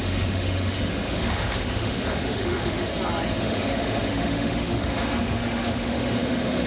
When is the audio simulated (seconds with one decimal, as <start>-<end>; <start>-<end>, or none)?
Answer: 0.0-2.9; 3.4-6.7